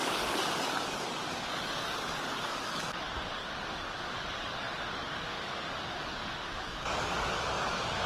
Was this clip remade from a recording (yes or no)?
yes